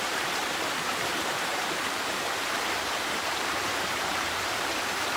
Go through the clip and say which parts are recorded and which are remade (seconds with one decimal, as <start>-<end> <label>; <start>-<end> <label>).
0.0-5.2 remade